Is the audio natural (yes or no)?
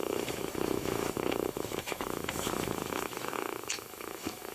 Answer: no